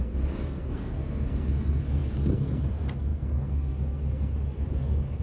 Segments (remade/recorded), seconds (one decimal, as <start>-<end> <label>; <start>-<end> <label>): 0.0-5.2 remade